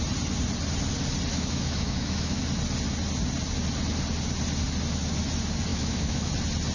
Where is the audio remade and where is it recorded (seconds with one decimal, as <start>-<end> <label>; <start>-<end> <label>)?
0.0-1.3 recorded; 1.3-2.4 remade; 2.4-5.7 recorded; 5.7-6.3 remade; 6.3-6.7 recorded